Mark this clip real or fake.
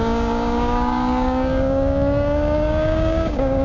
fake